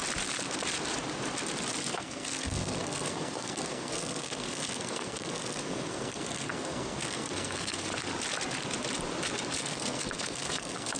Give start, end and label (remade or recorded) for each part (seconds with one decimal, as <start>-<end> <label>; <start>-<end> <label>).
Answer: 0.0-1.8 recorded; 1.8-7.9 remade; 7.9-9.6 recorded; 9.6-11.0 remade